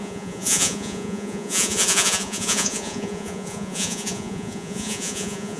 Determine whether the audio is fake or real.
fake